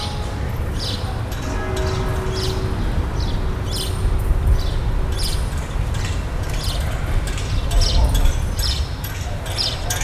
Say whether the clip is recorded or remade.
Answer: recorded